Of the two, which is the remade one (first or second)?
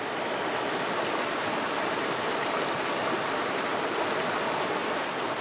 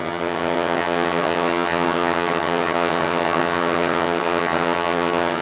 second